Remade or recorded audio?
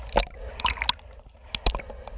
recorded